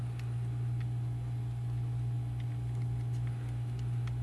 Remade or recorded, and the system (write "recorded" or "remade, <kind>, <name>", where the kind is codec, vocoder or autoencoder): recorded